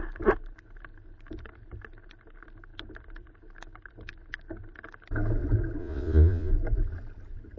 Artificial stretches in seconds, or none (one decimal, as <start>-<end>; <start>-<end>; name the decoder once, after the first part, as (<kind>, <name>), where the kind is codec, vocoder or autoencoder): 5.8-6.5 (vocoder, Vocos)